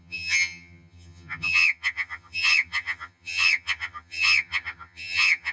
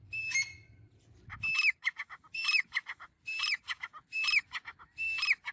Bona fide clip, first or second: second